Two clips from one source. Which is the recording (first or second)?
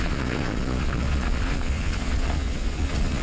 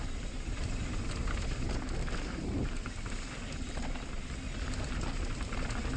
second